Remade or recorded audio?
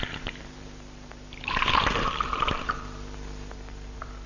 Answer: remade